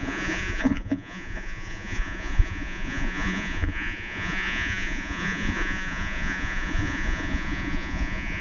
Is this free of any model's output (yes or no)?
no